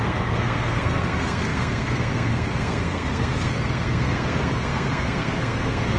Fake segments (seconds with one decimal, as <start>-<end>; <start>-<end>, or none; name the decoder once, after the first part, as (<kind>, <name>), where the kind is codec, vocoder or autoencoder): 0.0-6.0 (codec, SNAC)